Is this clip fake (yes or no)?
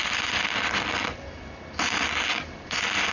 no